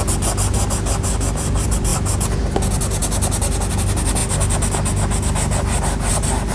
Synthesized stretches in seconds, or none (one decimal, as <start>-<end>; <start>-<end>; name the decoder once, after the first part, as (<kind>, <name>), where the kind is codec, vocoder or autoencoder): none